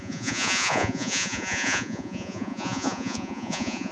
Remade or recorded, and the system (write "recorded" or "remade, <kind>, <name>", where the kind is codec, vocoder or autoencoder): remade, vocoder, Vocos